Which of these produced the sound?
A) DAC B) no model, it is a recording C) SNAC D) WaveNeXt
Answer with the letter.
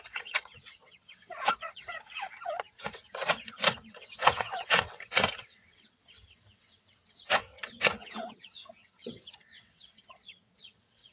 D